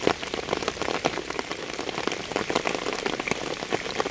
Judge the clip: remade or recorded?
recorded